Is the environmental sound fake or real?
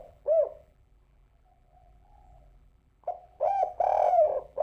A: fake